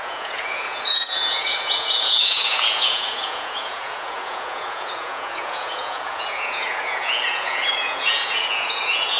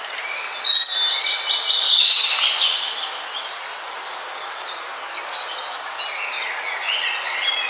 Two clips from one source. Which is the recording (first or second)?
second